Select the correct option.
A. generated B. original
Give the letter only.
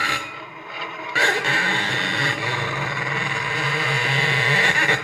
B